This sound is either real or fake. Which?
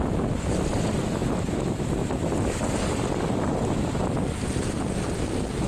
real